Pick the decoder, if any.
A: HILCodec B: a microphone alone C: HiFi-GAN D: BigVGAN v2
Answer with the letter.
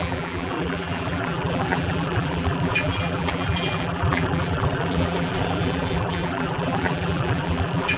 D